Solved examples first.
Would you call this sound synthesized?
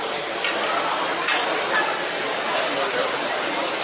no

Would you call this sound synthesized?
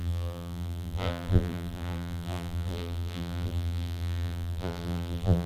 yes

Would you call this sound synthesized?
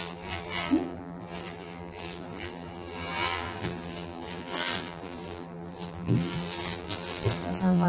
yes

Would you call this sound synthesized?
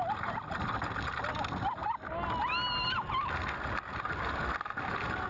no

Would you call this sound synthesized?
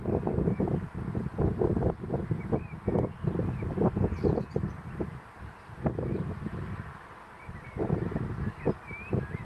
yes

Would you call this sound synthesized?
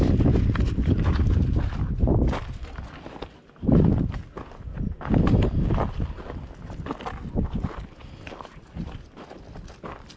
no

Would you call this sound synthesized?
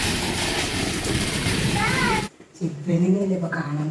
yes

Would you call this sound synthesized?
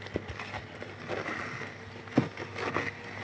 no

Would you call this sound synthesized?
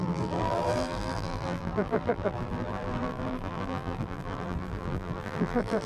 yes